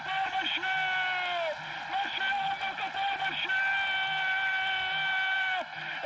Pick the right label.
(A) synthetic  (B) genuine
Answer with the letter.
B